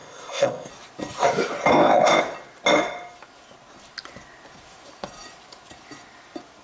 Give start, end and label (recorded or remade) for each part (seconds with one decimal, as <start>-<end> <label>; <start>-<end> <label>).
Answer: 0.0-0.7 remade; 0.7-1.7 recorded; 1.7-2.2 remade; 2.2-6.6 recorded